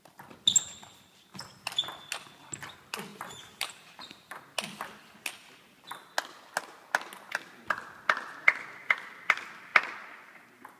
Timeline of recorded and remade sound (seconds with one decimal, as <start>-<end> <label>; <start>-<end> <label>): 0.0-3.1 recorded; 3.1-4.4 remade; 4.4-10.8 recorded